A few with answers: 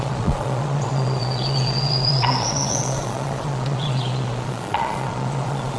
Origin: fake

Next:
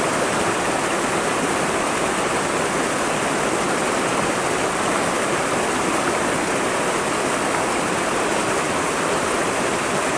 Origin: real